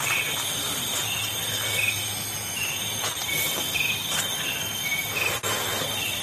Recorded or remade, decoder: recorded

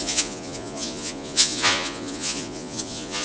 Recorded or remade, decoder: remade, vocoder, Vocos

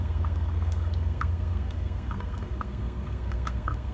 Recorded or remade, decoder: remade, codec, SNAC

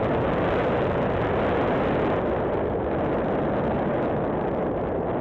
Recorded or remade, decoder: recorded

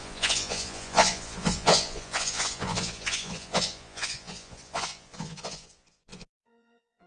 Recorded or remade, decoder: remade, vocoder, Vocos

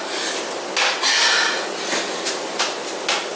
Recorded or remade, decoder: recorded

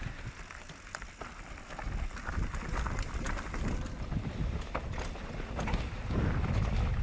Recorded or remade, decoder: recorded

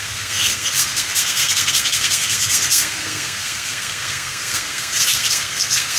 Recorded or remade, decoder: remade, codec, SNAC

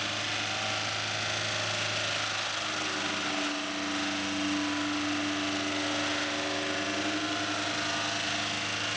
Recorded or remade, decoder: recorded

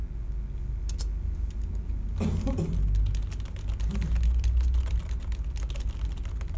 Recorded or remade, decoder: recorded